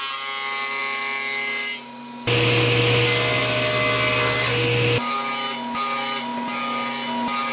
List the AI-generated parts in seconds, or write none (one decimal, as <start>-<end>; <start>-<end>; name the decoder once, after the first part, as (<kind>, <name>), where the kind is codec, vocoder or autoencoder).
none